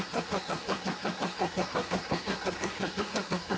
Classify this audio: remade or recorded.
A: remade